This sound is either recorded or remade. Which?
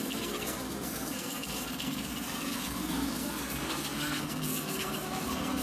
remade